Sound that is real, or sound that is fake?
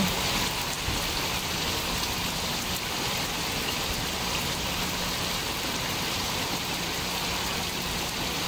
real